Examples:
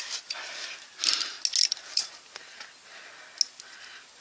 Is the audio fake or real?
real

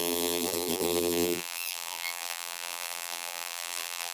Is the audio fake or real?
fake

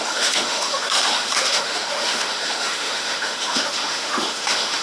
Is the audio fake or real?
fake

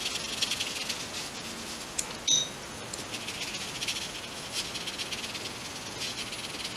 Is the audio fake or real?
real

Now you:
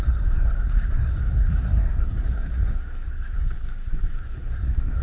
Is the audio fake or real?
fake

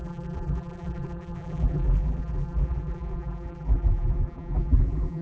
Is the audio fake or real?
fake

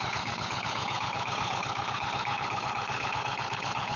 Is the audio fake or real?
fake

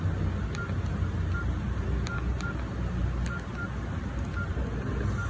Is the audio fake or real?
real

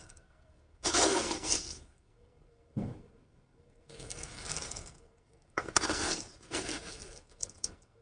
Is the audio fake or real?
fake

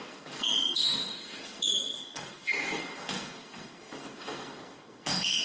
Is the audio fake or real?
fake